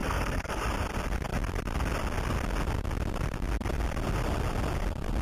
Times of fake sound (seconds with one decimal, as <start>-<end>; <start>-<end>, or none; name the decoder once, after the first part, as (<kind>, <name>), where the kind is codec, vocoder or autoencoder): 0.0-0.6 (codec, SNAC)